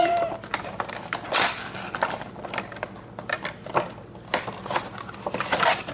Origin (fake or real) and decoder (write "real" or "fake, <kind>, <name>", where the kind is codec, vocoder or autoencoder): real